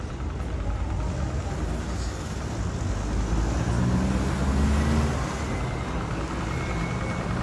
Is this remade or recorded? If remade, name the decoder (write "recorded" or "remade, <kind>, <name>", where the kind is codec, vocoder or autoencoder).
recorded